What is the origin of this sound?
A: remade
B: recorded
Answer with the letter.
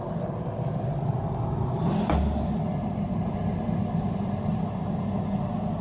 B